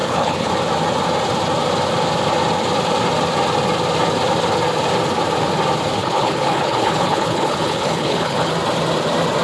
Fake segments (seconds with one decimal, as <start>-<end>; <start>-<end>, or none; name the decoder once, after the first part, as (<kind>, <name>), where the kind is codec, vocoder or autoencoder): 0.0-0.5 (codec, HILCodec); 6.0-8.5